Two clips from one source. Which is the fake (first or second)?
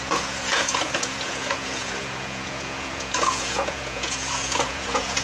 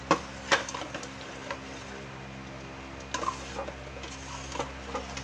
first